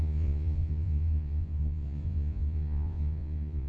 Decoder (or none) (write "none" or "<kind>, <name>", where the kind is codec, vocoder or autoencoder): vocoder, Vocos